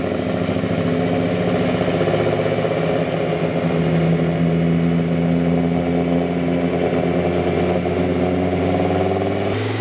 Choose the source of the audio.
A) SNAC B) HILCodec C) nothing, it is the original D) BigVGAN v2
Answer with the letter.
C